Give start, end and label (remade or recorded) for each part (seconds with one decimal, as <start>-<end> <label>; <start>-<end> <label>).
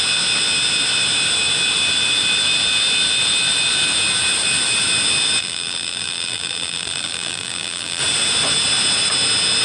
0.0-5.4 recorded; 5.4-8.0 remade; 8.0-9.6 recorded